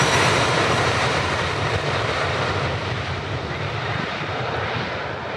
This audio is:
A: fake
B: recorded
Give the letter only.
A